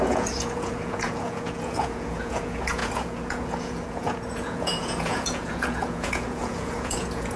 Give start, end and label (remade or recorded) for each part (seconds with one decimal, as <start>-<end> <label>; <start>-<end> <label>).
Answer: 0.0-7.4 remade